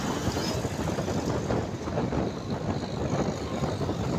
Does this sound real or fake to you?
real